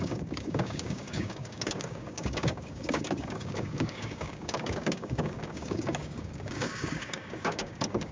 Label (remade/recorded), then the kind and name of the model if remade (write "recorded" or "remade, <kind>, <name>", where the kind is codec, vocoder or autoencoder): remade, codec, DAC